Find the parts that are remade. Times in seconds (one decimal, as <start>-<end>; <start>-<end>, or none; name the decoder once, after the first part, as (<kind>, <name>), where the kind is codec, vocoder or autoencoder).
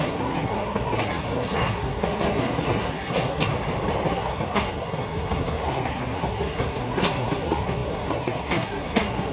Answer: 0.0-3.5 (codec, SNAC); 4.1-9.3